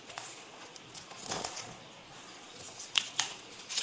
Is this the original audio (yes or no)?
no